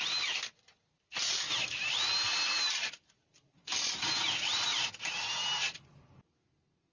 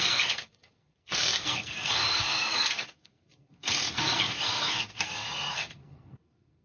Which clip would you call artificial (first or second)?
second